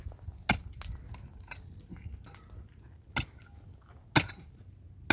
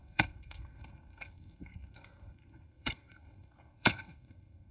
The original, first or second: first